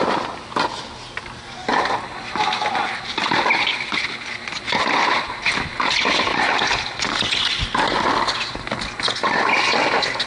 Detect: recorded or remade recorded